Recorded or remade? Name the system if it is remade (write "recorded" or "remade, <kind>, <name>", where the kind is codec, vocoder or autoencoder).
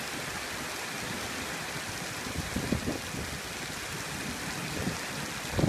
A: recorded